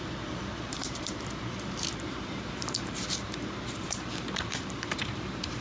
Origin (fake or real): fake